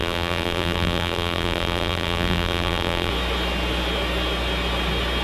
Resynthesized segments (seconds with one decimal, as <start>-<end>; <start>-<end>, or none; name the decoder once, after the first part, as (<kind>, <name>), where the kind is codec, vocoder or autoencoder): 0.0-3.1 (vocoder, BigVGAN v2)